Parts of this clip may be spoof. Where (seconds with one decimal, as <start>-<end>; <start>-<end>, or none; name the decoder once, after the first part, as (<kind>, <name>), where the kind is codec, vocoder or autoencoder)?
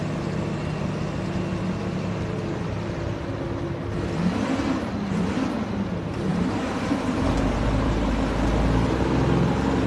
6.3-7.2 (vocoder, BigVGAN v2)